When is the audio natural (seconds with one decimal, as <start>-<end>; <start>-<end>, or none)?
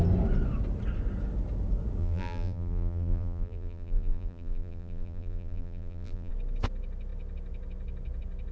0.0-2.0; 6.3-8.5